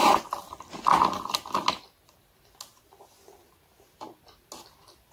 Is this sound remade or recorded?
recorded